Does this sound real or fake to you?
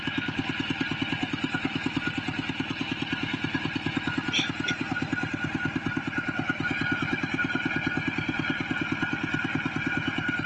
real